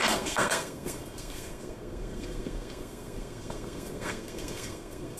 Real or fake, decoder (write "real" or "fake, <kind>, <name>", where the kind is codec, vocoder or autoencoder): fake, codec, SNAC